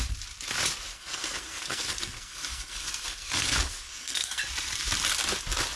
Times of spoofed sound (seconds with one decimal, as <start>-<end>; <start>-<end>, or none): 0.9-4.4